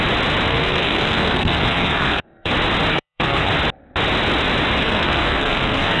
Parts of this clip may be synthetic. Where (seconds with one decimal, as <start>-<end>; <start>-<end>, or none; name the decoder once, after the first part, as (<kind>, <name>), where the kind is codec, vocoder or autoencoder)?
0.5-2.5 (codec, SNAC); 2.9-3.5; 4.8-6.0